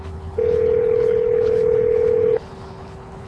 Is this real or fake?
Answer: fake